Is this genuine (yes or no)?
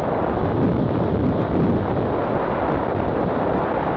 yes